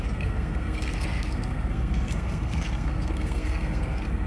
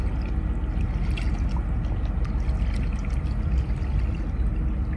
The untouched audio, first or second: second